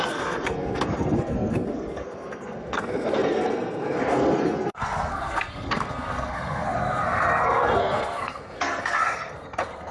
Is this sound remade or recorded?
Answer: remade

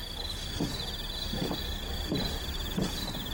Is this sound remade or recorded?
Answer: recorded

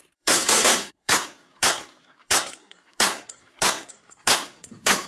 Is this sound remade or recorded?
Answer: remade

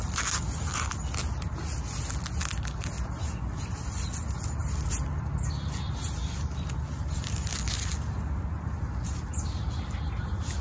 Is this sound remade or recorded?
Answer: recorded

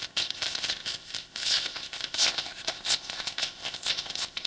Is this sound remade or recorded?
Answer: remade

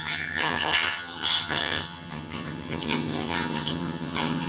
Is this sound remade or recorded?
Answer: remade